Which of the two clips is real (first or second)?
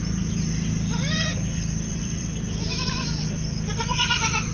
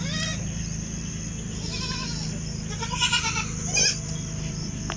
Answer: second